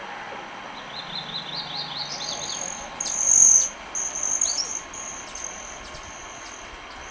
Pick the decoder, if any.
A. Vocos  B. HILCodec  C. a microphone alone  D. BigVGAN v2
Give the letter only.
C